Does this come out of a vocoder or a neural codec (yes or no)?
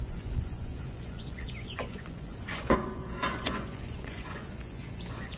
yes